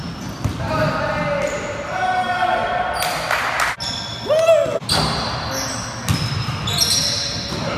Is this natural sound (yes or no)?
yes